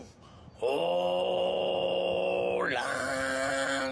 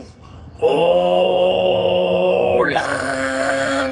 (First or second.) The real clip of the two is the first